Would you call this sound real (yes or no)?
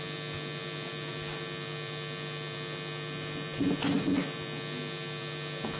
yes